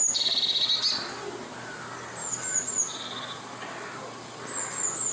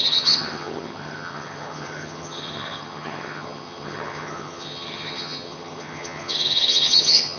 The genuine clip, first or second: first